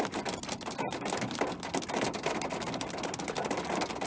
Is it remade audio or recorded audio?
remade